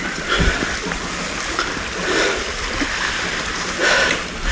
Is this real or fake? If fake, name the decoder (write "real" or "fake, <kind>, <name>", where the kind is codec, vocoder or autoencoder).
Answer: real